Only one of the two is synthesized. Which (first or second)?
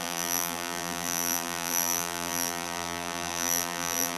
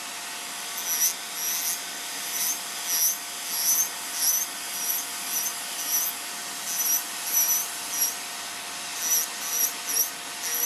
first